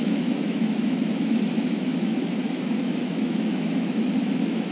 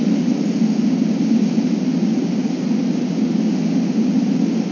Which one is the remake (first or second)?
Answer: first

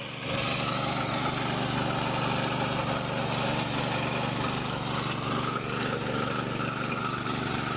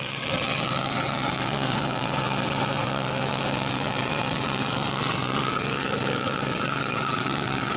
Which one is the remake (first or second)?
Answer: second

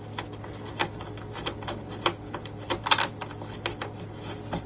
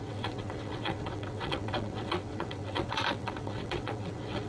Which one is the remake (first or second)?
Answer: second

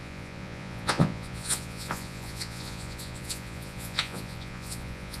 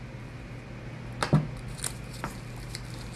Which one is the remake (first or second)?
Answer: first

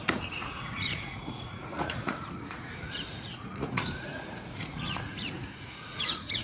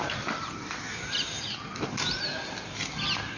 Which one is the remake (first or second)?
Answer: first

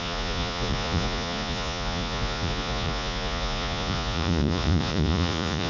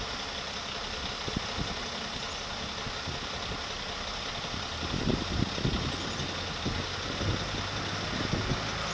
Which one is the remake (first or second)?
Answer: first